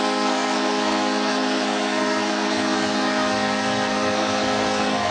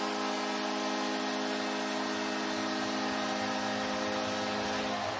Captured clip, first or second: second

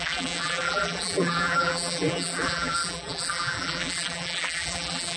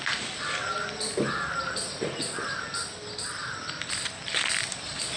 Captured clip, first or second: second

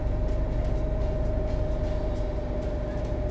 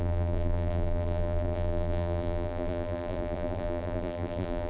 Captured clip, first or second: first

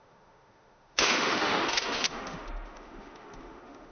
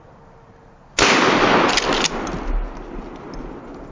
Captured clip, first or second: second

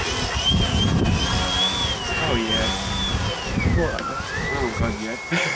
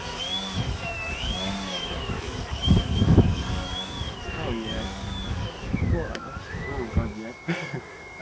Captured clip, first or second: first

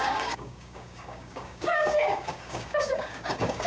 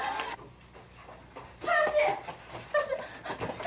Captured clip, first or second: second